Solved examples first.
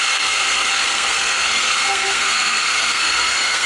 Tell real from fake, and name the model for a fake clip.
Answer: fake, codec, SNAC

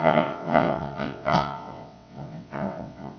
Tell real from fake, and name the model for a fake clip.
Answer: fake, vocoder, WaveNeXt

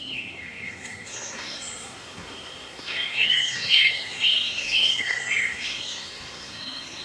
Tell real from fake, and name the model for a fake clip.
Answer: fake, codec, SNAC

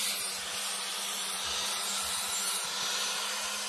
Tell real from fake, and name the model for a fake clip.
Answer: real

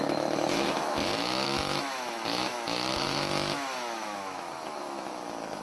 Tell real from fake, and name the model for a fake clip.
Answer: fake, autoencoder, DAC-VAE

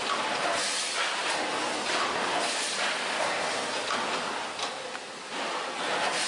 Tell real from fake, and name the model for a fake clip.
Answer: real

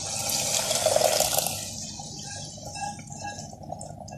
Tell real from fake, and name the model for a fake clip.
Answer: real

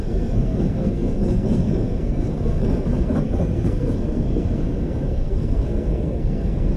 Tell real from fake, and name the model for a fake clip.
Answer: fake, codec, SNAC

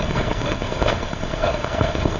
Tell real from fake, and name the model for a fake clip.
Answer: fake, codec, SNAC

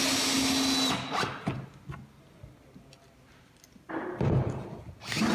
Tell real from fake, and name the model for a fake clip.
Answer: real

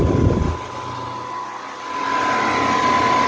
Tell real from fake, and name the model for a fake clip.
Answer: real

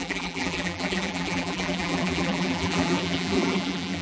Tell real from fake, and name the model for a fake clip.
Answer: fake, vocoder, BigVGAN v2